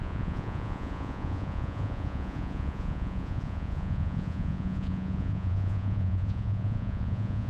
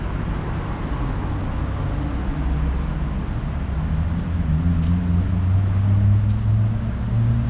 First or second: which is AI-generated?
first